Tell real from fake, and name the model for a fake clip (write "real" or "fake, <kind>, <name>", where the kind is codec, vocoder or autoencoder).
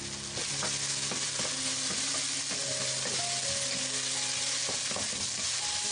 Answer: real